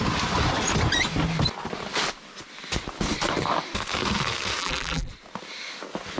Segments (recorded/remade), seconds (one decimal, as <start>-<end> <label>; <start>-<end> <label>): 0.0-4.6 recorded; 4.6-5.1 remade; 5.1-6.2 recorded